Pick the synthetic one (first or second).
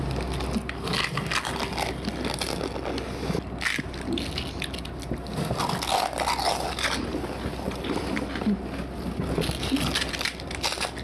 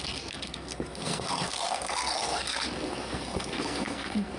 second